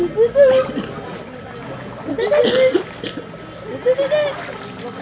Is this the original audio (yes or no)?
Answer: yes